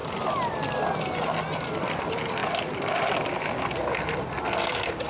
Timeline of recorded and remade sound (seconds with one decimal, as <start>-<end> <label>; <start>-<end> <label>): 0.0-5.1 recorded

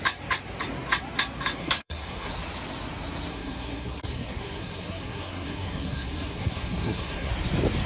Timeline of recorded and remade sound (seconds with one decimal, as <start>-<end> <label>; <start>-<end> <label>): 0.0-1.6 recorded; 1.6-2.3 remade; 2.3-3.3 recorded; 3.3-7.3 remade; 7.3-7.9 recorded